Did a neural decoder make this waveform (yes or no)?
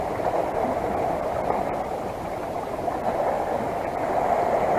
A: no